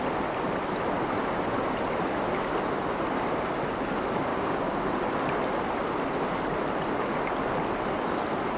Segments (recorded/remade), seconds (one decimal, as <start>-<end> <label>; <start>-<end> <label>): 0.0-4.3 recorded; 4.3-4.9 remade; 4.9-8.6 recorded